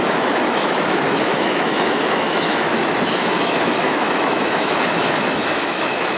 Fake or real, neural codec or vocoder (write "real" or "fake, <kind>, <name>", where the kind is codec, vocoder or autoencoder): fake, autoencoder, DAC-VAE